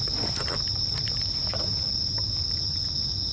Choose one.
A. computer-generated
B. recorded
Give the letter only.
B